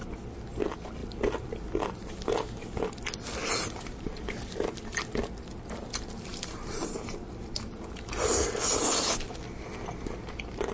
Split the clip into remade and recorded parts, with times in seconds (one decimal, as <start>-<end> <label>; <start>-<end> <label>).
0.0-3.4 recorded; 3.4-4.2 remade; 4.2-6.3 recorded; 6.3-7.3 remade; 7.3-10.7 recorded